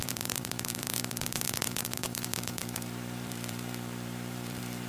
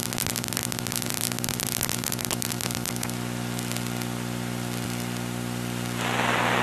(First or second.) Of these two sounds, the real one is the second